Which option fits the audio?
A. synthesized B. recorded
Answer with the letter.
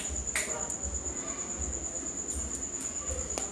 B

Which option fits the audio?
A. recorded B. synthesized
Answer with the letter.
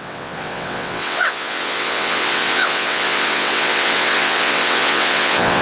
B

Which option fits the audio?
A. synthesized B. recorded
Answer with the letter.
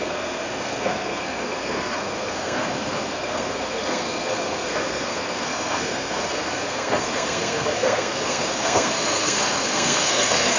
A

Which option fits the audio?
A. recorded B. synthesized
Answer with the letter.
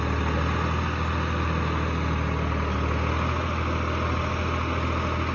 A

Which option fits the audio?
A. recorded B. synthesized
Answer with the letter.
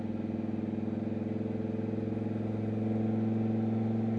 A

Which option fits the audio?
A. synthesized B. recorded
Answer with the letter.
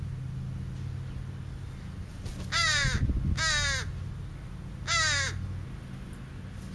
B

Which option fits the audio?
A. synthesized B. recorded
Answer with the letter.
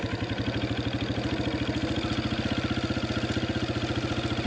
B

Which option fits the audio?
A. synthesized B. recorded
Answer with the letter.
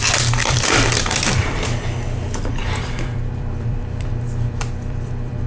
A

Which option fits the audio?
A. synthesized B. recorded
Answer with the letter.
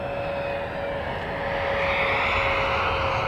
B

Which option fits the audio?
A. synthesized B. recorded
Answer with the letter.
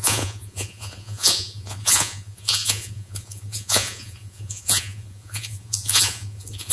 A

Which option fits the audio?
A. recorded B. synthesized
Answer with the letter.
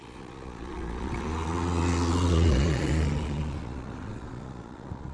B